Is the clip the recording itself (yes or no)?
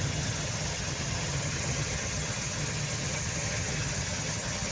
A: no